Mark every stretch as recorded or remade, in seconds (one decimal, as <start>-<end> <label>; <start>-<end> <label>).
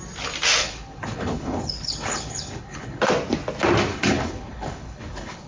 0.0-0.6 recorded; 0.6-3.1 remade; 3.1-3.9 recorded; 3.9-5.5 remade